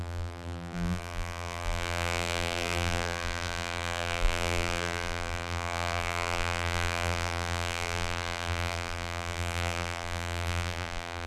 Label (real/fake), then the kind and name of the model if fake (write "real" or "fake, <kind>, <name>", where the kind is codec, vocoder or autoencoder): fake, vocoder, BigVGAN v2